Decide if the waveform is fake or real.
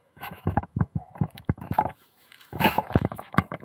fake